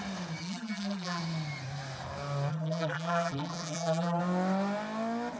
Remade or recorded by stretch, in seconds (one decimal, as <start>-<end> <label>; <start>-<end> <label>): 0.0-0.4 recorded; 0.4-1.2 remade; 1.2-2.5 recorded; 2.5-4.2 remade; 4.2-5.4 recorded